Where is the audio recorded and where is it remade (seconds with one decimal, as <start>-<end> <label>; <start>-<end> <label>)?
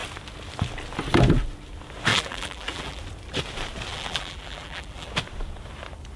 0.0-2.1 recorded; 2.1-3.0 remade; 3.0-3.9 recorded; 3.9-5.1 remade; 5.1-6.2 recorded